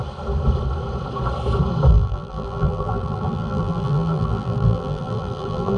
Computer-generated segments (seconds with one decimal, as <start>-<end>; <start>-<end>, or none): 1.9-5.8